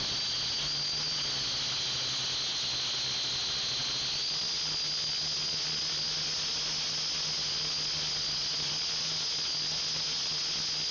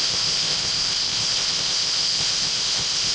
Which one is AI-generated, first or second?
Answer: second